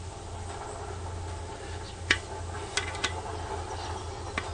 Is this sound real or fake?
fake